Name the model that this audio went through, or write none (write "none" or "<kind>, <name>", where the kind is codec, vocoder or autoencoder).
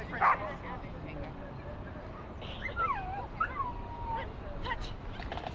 none